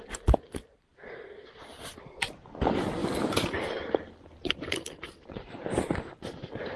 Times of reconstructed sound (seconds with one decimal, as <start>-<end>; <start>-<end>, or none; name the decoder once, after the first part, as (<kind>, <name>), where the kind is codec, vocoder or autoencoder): 0.0-6.8 (vocoder, BigVGAN v2)